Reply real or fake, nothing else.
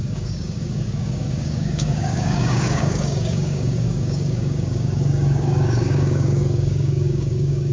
fake